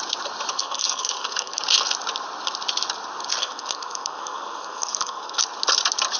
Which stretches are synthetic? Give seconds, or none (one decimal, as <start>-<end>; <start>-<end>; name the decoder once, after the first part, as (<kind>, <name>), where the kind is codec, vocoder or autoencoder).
0.5-1.6 (codec, SNAC); 3.4-5.4